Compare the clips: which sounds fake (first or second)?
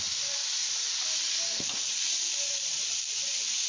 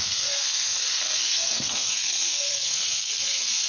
second